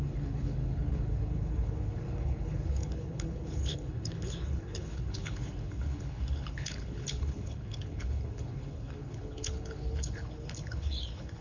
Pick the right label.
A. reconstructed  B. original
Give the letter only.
A